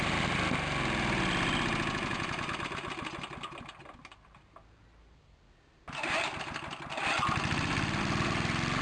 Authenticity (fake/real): real